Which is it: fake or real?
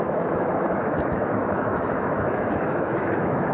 fake